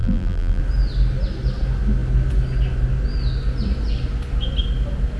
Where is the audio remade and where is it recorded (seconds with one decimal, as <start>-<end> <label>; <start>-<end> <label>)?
0.0-0.6 remade; 0.6-5.2 recorded